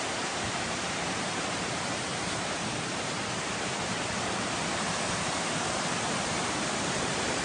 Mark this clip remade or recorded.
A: remade